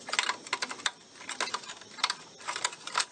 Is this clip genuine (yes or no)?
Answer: yes